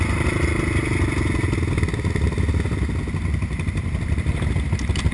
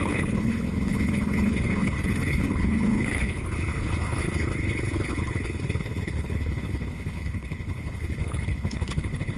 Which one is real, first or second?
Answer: first